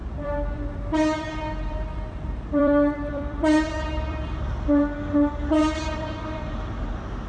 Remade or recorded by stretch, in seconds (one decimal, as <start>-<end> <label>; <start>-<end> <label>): 0.0-4.4 remade; 4.4-5.6 recorded; 5.6-6.5 remade; 6.5-7.3 recorded